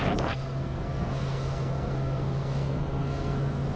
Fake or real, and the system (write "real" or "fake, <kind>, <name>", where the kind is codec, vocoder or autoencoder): fake, codec, SNAC